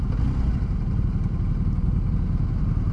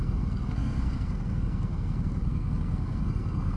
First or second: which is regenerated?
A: second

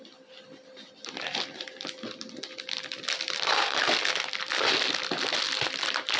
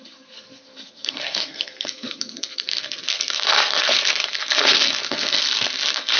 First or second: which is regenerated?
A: second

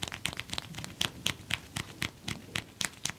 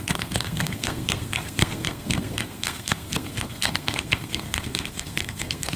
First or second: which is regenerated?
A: second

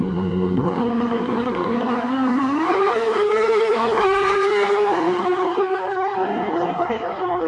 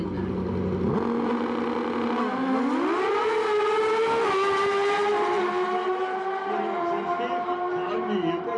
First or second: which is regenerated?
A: first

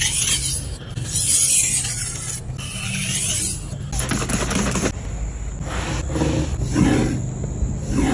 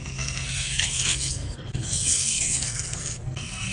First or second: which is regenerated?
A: second